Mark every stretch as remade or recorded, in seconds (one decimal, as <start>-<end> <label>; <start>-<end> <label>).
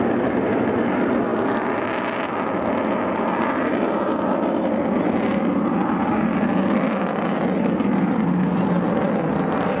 0.0-9.8 recorded